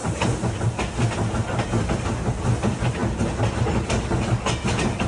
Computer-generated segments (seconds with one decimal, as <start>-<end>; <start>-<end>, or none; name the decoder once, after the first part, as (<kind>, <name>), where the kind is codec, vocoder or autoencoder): none